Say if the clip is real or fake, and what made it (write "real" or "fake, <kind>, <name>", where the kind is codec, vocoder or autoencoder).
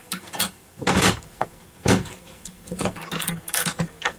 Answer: fake, codec, SNAC